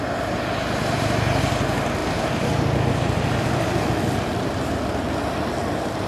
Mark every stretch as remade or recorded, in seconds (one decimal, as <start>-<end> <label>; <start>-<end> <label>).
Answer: 0.0-2.0 recorded; 2.0-6.1 remade